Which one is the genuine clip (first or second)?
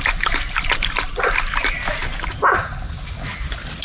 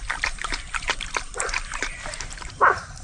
first